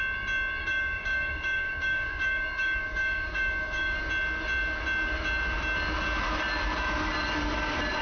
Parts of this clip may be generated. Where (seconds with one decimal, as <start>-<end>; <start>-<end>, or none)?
0.6-4.1